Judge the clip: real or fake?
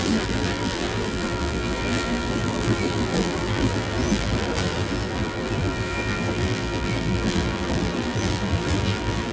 fake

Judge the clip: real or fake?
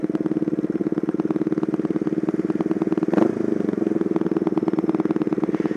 fake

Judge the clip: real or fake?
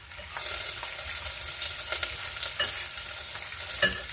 real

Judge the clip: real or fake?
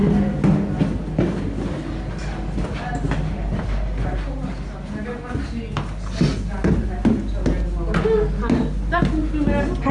real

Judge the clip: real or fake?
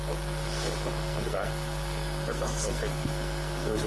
fake